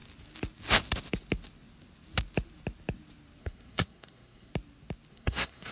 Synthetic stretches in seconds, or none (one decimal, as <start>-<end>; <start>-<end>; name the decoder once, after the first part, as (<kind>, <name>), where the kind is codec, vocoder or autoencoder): 3.4-4.5 (codec, SNAC); 5.1-5.7